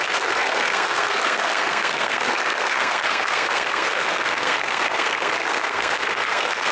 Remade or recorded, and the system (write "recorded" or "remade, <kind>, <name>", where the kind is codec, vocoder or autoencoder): remade, codec, SNAC